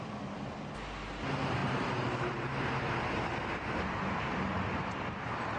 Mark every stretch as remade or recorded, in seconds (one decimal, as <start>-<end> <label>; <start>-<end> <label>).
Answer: 0.0-1.6 recorded; 1.6-5.0 remade; 5.0-5.6 recorded